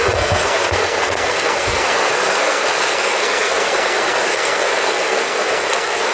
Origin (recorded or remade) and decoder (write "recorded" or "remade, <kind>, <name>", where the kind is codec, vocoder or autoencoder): remade, codec, SNAC